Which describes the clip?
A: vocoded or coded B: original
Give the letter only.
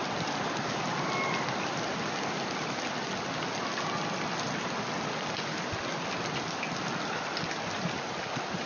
B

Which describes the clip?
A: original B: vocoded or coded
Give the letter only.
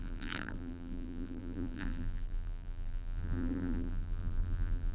B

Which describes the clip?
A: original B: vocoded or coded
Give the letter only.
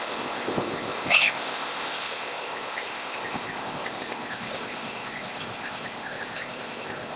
B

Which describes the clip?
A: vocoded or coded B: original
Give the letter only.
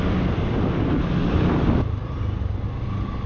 B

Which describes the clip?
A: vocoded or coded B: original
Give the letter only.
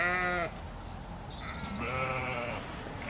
B